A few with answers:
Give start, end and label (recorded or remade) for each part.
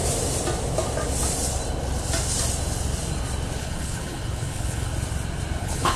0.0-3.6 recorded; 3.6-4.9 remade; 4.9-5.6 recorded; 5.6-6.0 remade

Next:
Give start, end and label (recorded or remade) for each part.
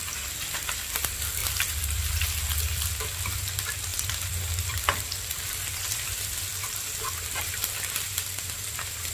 0.0-1.4 recorded; 1.4-2.1 remade; 2.1-3.9 recorded; 3.9-8.7 remade; 8.7-9.1 recorded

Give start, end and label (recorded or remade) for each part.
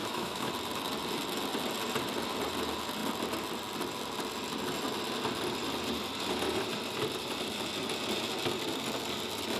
0.0-0.5 remade; 0.5-9.6 recorded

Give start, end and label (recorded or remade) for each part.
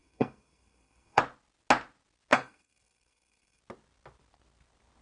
0.0-1.2 remade; 1.2-2.3 recorded; 2.3-3.6 remade; 3.6-5.0 recorded